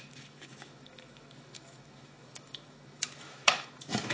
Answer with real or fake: fake